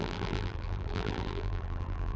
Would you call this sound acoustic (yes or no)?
no